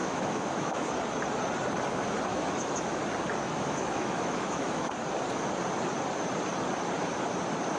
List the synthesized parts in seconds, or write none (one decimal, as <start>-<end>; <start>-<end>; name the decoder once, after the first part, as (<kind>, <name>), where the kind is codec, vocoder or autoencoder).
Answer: 0.0-0.9 (autoencoder, DAC-VAE); 2.3-3.0; 3.5-4.9